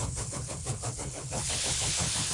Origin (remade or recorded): remade